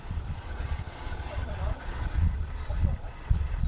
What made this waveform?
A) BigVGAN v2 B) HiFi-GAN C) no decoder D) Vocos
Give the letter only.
D